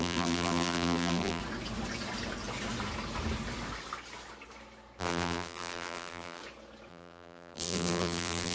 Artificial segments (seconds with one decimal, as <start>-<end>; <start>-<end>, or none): 0.0-1.4; 5.0-6.4; 6.9-8.5